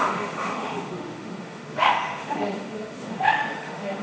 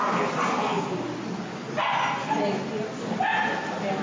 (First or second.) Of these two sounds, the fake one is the first